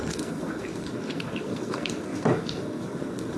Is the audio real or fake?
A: fake